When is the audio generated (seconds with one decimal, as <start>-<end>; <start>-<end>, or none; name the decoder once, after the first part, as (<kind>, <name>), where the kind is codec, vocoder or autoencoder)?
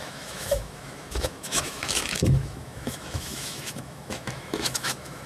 0.0-5.3 (autoencoder, DAC-VAE)